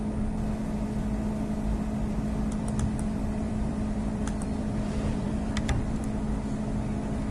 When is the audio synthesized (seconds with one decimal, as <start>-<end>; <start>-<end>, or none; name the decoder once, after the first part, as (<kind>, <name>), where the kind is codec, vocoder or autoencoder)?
3.4-6.0 (vocoder, BigVGAN v2)